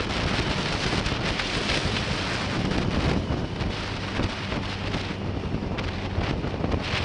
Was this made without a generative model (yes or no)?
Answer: yes